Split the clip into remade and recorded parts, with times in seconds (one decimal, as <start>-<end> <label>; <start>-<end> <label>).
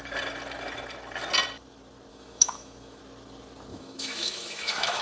0.0-2.1 recorded; 2.1-3.0 remade; 3.0-3.7 recorded; 3.7-5.0 remade